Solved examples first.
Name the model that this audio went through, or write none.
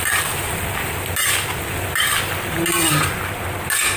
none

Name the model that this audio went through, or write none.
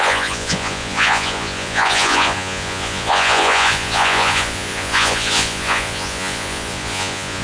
vocoder, Vocos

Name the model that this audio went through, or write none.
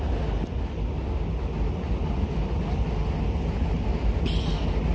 none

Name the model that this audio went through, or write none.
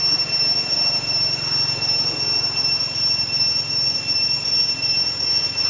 none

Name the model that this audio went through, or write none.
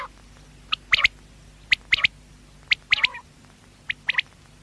none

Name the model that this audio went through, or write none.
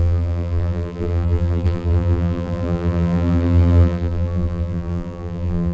vocoder, BigVGAN v2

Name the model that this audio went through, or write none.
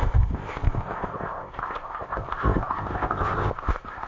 codec, ZipCodec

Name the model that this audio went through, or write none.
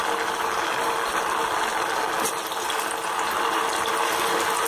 none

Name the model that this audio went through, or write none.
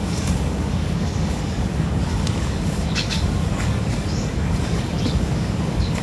codec, DAC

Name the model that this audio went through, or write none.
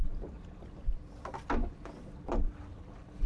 none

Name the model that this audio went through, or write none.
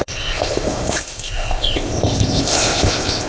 codec, ZipCodec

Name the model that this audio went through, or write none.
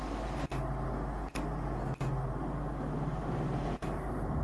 none